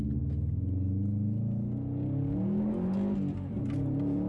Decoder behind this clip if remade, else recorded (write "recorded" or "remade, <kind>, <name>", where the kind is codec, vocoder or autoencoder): recorded